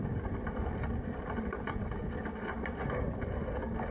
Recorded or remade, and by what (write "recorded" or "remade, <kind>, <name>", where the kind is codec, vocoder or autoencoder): recorded